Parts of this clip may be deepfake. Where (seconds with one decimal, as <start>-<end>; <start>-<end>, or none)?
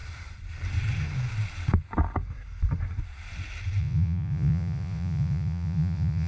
3.8-6.3